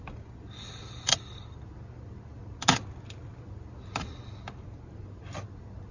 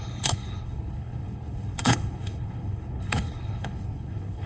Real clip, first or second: first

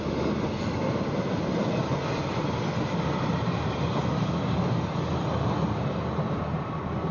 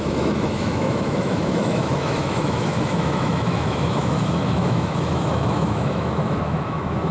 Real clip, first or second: first